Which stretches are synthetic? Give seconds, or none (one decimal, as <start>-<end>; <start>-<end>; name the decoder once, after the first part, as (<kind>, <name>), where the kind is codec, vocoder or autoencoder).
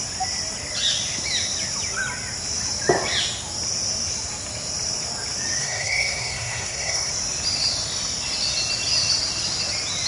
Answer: 5.6-7.1 (codec, SNAC)